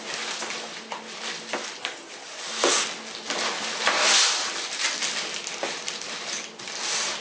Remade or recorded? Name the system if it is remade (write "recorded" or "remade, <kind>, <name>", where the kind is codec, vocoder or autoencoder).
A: recorded